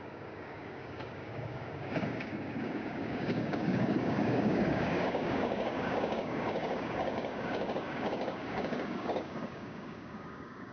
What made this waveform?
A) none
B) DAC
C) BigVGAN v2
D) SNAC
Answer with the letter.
B